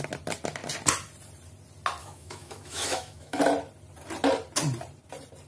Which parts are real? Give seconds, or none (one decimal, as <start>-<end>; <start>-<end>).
0.0-2.0; 3.4-5.5